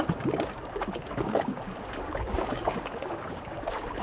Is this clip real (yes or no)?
no